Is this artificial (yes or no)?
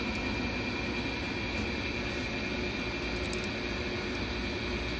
no